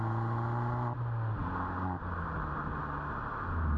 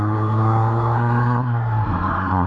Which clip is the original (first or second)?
first